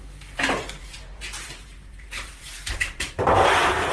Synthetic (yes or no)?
yes